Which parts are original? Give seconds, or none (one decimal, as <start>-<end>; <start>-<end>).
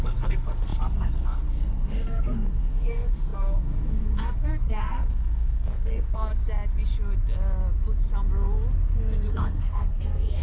6.3-9.3